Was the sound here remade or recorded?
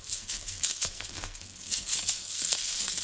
remade